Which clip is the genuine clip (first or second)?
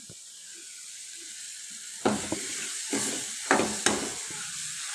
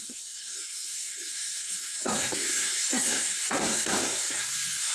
first